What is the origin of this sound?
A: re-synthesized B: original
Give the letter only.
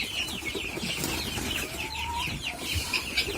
A